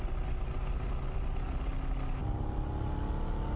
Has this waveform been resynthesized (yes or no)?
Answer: no